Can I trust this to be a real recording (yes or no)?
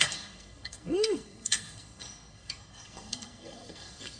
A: no